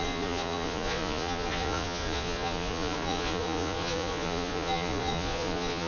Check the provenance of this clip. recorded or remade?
remade